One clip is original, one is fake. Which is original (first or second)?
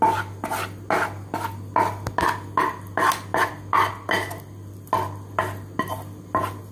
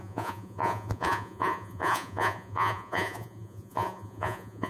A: first